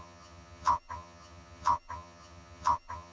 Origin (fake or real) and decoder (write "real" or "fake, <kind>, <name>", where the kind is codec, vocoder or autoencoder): fake, vocoder, HiFi-GAN